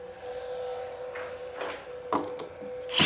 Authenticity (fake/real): real